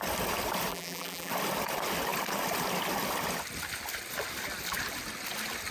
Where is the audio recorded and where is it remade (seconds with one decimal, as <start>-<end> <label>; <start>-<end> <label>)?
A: 0.0-0.7 recorded; 0.7-1.3 remade; 1.3-5.7 recorded